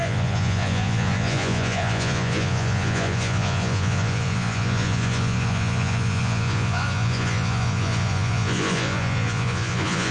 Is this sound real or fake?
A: fake